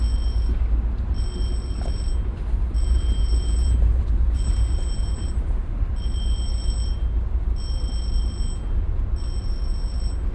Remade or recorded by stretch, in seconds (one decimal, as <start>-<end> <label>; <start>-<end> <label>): 0.0-2.8 recorded; 2.8-5.9 remade; 5.9-10.3 recorded